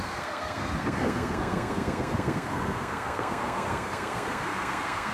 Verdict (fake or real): fake